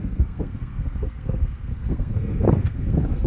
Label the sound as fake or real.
fake